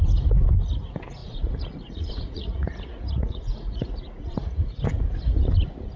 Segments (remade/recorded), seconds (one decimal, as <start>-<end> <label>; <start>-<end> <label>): 0.0-1.2 recorded; 1.2-4.8 remade; 4.8-6.0 recorded